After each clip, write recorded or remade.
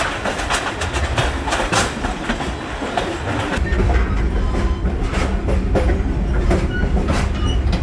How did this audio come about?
recorded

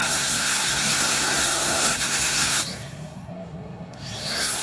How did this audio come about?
remade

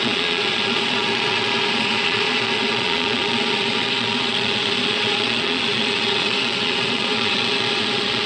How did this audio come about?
remade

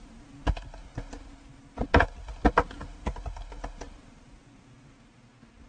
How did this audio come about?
recorded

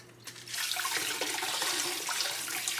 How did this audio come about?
recorded